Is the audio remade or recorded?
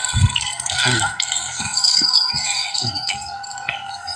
remade